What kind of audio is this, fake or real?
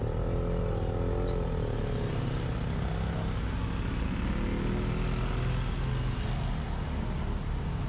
real